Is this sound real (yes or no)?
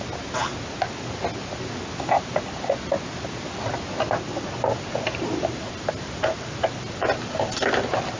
yes